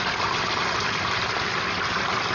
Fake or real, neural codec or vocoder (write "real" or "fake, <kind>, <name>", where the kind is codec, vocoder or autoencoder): real